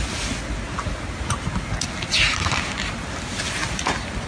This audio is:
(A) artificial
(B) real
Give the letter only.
B